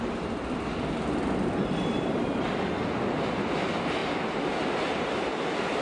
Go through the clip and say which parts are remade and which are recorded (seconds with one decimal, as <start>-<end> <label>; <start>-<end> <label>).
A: 0.0-5.8 recorded